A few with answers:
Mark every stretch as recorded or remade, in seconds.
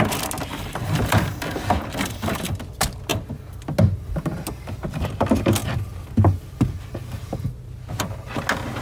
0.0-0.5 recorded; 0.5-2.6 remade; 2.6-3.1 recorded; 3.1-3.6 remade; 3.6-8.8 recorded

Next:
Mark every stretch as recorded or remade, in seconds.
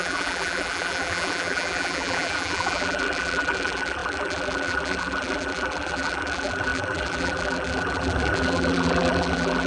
0.0-9.7 remade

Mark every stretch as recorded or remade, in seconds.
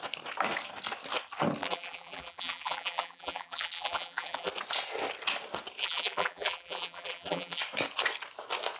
0.0-1.6 recorded; 1.6-4.5 remade; 4.5-5.8 recorded; 5.8-7.6 remade; 7.6-8.8 recorded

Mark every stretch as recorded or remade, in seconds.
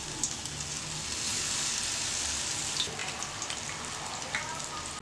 0.0-5.0 recorded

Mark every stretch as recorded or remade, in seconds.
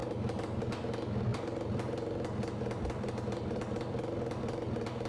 0.0-1.3 recorded; 1.3-4.4 remade; 4.4-5.1 recorded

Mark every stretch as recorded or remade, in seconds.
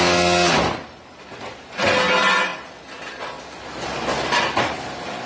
0.0-5.3 recorded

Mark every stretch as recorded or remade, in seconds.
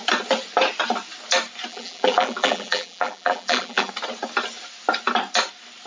0.0-1.7 recorded; 1.7-3.9 remade; 3.9-5.9 recorded